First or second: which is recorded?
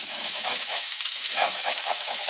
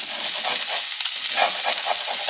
second